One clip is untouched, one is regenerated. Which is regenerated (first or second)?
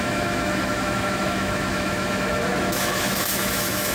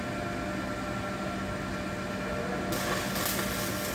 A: first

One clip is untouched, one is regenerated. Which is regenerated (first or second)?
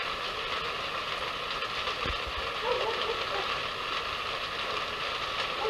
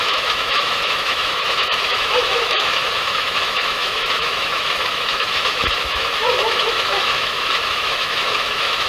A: second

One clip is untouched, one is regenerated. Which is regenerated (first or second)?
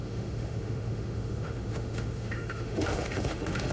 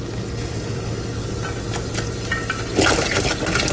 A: first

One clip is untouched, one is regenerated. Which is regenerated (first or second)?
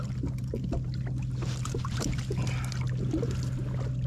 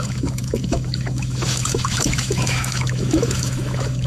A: second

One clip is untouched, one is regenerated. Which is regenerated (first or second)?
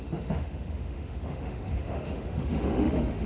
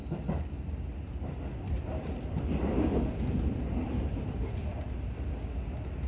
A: first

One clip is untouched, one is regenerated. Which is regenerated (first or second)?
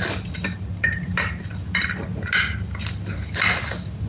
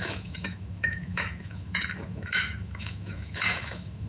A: second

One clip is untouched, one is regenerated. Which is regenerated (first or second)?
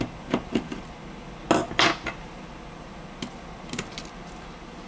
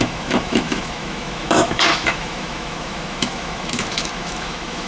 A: second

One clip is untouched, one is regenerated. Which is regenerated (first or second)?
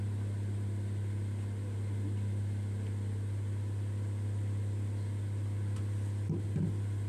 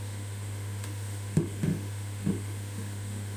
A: second